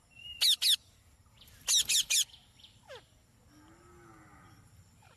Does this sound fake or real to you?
real